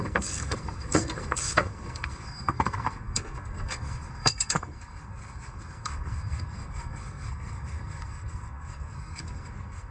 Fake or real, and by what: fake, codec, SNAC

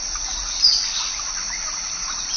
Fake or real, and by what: real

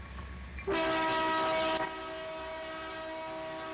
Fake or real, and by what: real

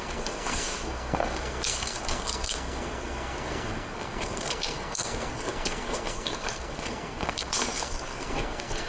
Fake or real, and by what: fake, codec, SNAC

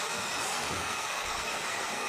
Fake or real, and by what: fake, codec, SNAC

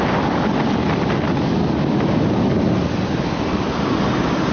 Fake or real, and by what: real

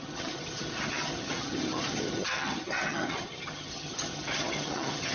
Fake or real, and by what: fake, vocoder, HiFi-GAN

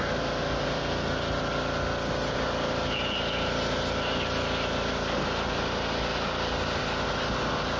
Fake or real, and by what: real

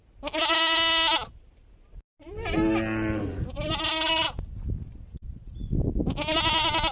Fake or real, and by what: real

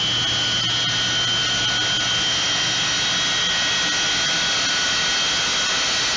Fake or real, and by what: real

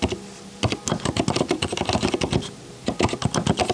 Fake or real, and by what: real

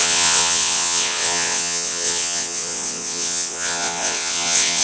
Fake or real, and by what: fake, vocoder, WaveNeXt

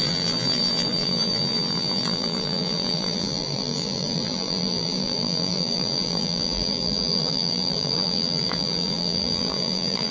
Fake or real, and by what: fake, vocoder, BigVGAN v2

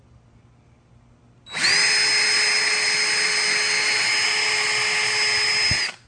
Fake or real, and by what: real